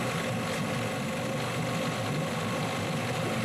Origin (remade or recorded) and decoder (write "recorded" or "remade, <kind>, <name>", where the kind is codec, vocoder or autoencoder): recorded